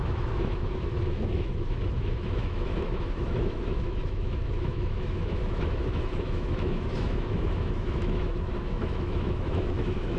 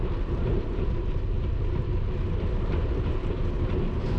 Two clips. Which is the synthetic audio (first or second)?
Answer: first